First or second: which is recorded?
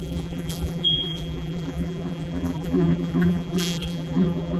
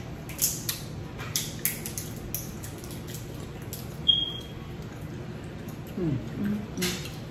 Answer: second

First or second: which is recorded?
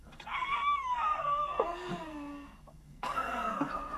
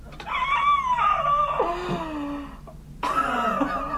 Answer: second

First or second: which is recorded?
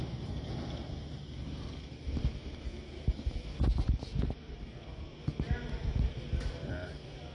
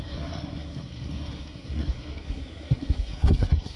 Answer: first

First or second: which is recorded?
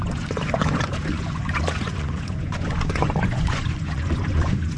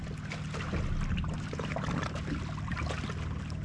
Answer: second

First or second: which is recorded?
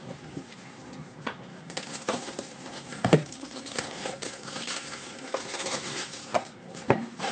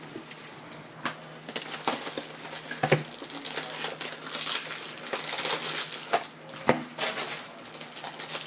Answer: second